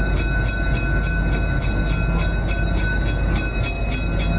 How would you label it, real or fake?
real